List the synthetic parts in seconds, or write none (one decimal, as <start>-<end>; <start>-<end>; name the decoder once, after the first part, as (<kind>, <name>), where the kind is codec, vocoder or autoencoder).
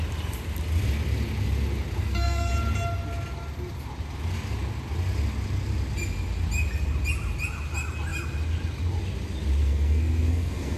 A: 2.0-2.5 (codec, SNAC); 9.6-10.8